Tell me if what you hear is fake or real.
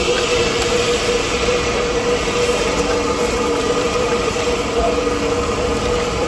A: fake